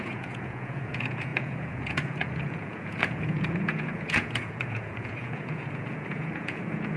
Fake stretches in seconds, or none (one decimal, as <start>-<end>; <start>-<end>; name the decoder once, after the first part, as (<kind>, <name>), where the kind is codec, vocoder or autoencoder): 0.0-7.0 (vocoder, Vocos)